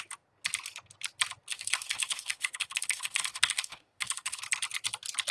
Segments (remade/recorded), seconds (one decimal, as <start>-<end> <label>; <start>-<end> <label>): 0.0-1.5 recorded; 1.5-4.4 remade; 4.4-5.3 recorded